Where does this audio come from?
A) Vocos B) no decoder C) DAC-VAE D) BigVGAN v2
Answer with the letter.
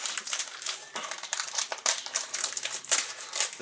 D